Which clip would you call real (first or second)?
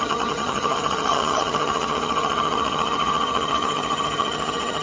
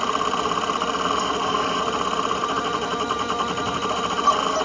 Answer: second